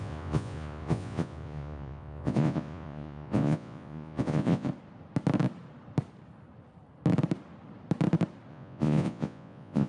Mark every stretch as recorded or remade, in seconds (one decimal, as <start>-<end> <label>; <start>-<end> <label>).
0.0-4.7 remade; 4.7-8.5 recorded; 8.5-9.9 remade